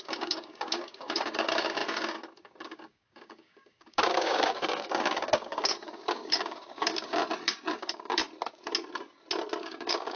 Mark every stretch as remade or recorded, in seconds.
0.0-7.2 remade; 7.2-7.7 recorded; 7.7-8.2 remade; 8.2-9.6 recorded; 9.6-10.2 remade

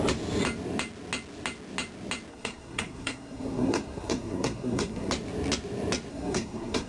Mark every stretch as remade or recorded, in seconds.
0.0-2.3 recorded; 2.3-5.1 remade; 5.1-6.1 recorded; 6.1-6.9 remade